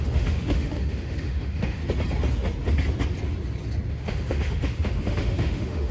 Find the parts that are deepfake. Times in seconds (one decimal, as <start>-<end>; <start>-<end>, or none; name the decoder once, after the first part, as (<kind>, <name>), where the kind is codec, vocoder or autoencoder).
0.0-1.8 (autoencoder, DAC-VAE); 3.9-5.9